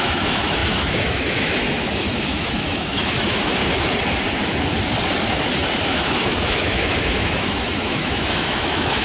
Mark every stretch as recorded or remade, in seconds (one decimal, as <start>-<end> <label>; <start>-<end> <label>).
0.0-3.6 remade; 3.6-5.9 recorded; 5.9-9.0 remade